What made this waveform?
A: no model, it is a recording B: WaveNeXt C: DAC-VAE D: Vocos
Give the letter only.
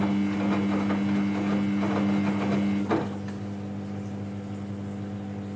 A